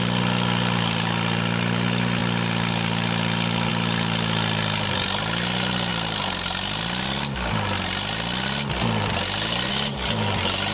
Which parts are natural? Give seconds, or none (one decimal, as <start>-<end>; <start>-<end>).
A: 0.0-10.7

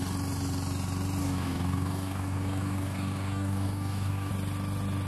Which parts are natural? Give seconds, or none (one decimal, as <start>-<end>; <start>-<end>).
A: 0.0-1.2; 4.3-5.1

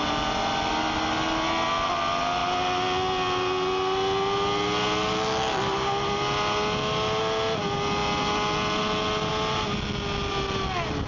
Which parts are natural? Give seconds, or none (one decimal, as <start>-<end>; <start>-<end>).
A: 0.0-11.1

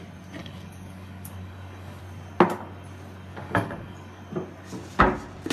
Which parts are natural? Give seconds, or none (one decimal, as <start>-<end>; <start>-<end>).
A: 0.0-0.4; 2.0-3.3; 4.2-5.5

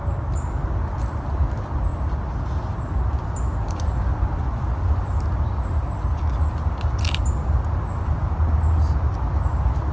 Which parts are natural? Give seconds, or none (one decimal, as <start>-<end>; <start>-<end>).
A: 0.0-9.9